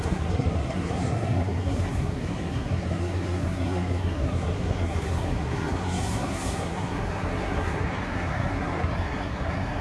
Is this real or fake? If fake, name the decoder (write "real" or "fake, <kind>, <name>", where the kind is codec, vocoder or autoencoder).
fake, codec, SNAC